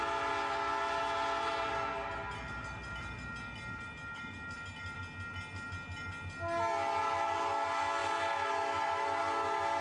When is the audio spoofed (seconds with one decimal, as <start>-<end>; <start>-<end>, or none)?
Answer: 1.5-5.0; 8.0-9.2

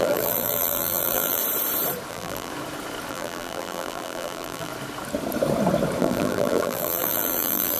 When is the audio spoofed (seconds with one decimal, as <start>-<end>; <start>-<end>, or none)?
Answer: 0.0-1.4; 2.1-2.5; 3.1-4.7; 6.0-7.8

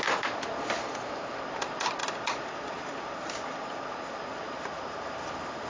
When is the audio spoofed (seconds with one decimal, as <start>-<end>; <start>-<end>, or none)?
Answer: 2.0-5.3

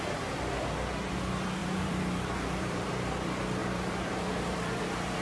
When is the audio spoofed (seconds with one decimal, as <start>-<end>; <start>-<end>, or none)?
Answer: 1.6-2.9; 3.6-4.8

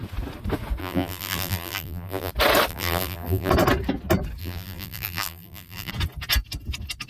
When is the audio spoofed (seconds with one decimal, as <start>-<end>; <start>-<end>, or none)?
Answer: 0.8-2.3; 2.7-3.5; 4.4-5.9

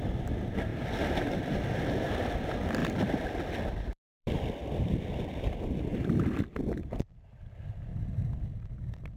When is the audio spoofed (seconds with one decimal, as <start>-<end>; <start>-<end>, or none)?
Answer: 0.0-2.8; 3.8-9.2

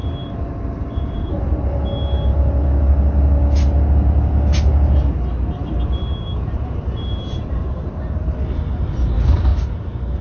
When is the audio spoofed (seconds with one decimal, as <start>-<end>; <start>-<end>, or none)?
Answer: 0.0-1.2; 5.6-8.6

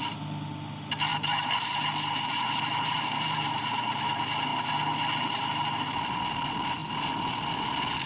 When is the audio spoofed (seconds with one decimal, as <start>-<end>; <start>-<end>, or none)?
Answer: 1.1-4.0